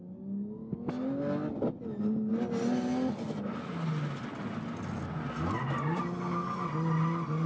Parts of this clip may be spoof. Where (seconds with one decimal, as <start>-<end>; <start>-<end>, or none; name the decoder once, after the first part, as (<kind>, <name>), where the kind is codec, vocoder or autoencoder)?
none